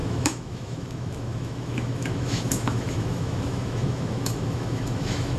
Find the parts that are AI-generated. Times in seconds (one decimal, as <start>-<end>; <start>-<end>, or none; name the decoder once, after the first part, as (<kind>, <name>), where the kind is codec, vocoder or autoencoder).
0.0-5.4 (autoencoder, DAC-VAE)